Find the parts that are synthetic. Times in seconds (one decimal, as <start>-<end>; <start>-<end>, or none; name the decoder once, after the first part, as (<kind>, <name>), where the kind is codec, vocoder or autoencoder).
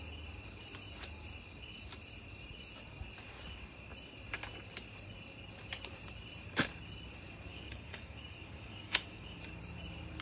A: 7.5-9.4 (codec, DAC)